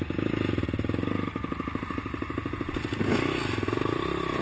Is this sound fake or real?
real